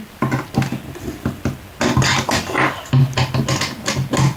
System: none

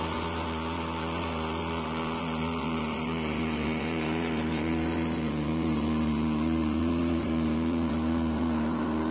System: vocoder, Vocos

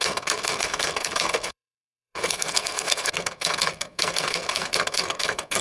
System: codec, SNAC